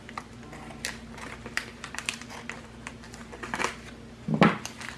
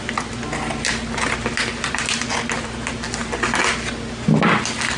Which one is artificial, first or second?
first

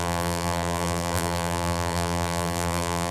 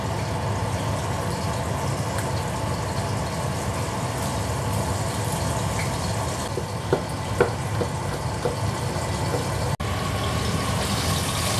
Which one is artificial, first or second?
first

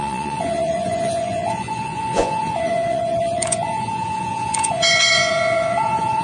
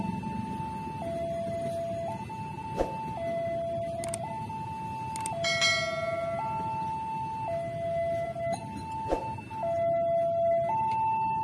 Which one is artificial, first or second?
first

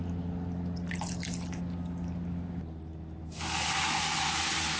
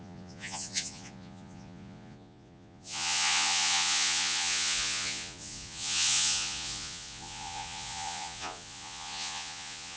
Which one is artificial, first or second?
second